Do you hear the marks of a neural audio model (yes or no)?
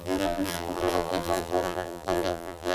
yes